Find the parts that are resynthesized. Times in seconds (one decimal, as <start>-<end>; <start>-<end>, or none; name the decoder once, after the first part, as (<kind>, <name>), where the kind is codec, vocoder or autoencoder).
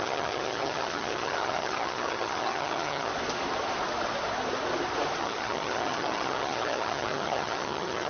0.0-3.1 (vocoder, HiFi-GAN); 5.2-8.1